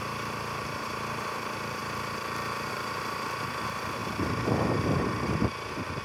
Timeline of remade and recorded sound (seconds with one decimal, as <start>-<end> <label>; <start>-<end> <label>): 0.0-1.8 remade; 1.8-2.7 recorded; 2.7-6.0 remade